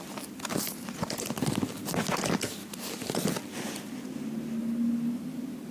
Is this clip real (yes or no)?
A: yes